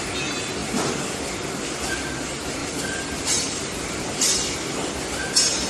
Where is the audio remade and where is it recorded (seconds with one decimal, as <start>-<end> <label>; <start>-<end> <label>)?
0.0-0.6 recorded; 0.6-1.3 remade; 1.3-2.6 recorded; 2.6-4.9 remade; 4.9-5.7 recorded